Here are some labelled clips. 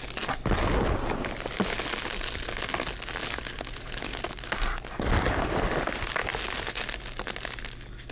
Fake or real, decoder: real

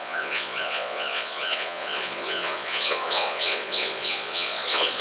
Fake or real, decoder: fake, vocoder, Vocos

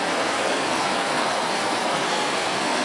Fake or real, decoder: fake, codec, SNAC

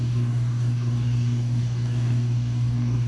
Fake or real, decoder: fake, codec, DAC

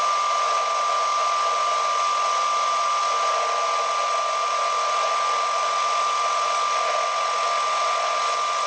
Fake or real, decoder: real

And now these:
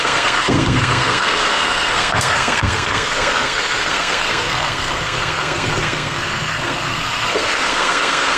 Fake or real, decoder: fake, codec, SNAC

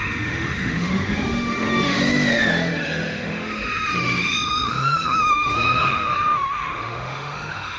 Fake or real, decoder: fake, autoencoder, DAC-VAE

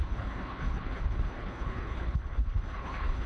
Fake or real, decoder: fake, codec, HILCodec